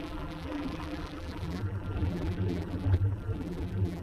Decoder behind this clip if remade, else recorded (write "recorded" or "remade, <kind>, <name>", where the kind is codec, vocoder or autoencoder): remade, vocoder, BigVGAN v2